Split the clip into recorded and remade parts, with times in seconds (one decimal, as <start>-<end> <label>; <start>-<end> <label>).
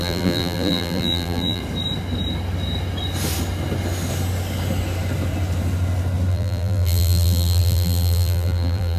0.0-1.6 remade; 1.6-6.3 recorded; 6.3-9.0 remade